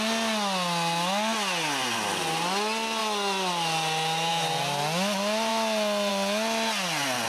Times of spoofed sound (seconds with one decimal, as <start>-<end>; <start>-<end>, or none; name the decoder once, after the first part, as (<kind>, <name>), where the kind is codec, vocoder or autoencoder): none

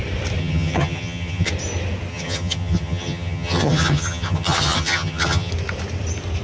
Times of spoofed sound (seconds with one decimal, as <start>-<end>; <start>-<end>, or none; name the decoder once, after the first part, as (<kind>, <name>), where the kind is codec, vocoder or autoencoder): 0.4-1.5 (vocoder, HiFi-GAN); 2.1-5.5

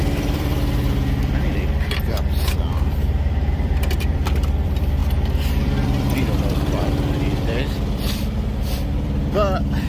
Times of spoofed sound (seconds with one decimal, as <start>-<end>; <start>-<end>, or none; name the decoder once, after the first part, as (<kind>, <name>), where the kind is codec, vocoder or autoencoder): 0.0-9.9 (vocoder, BigVGAN v2)

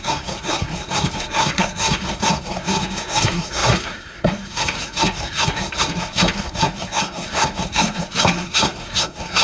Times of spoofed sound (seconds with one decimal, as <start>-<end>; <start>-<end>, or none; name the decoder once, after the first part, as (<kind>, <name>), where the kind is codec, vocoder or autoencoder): 0.0-9.4 (codec, SNAC)

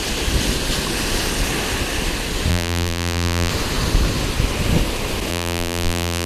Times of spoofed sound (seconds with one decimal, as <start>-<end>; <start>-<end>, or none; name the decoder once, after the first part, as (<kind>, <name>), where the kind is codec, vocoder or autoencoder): 2.5-3.5 (vocoder, BigVGAN v2); 5.3-6.3

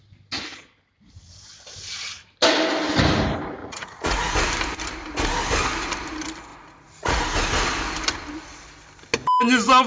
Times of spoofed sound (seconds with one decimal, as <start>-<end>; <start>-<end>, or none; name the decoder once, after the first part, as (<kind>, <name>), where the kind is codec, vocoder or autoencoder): 3.6-4.3 (vocoder, Vocos); 6.5-7.2

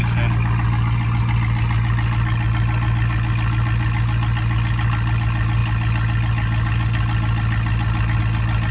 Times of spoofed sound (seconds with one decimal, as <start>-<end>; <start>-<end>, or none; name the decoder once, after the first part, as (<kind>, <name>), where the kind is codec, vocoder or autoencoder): none

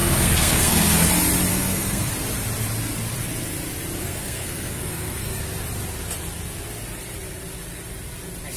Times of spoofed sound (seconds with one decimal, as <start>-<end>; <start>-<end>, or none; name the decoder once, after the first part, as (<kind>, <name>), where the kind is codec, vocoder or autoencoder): 0.0-1.1 (codec, SNAC); 1.5-2.1; 4.0-5.4